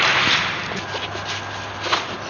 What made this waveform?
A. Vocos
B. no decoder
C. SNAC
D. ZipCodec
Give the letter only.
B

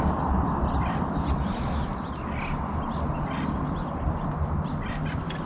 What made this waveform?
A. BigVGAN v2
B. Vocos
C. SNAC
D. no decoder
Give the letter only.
D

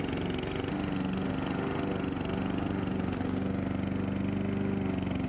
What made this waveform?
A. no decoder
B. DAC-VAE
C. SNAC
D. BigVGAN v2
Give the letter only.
A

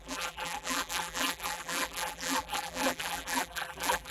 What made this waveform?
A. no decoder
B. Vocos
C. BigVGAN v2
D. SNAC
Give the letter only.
C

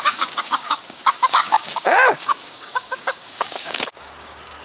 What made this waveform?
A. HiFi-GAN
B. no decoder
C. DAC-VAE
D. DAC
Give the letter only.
D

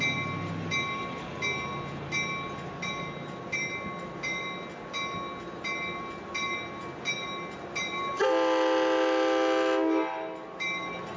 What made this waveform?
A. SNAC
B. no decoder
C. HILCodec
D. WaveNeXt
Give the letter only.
B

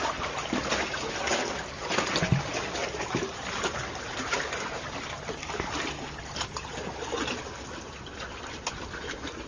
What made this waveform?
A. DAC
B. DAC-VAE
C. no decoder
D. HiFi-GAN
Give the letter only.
C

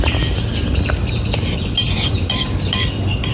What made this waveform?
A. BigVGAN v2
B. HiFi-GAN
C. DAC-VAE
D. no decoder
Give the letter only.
A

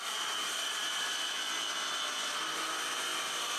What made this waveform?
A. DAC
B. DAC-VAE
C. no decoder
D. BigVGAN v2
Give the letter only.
C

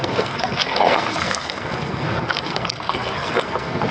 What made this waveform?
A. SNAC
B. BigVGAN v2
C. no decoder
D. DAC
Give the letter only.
A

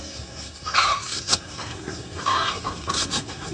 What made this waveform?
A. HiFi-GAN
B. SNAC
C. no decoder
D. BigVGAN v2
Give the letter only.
B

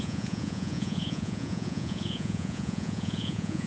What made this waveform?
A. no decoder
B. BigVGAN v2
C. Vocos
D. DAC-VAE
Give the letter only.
C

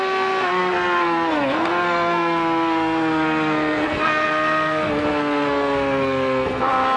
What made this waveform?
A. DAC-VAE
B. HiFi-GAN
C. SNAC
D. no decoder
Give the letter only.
C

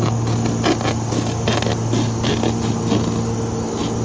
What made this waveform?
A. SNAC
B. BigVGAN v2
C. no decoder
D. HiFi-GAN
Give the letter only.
C